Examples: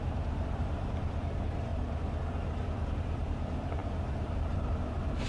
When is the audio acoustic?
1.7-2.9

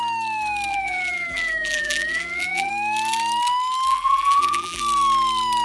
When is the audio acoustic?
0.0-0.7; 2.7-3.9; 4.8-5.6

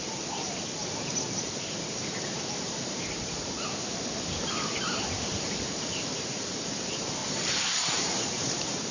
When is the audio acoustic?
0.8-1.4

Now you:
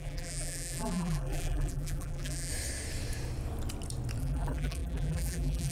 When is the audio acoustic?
2.5-4.2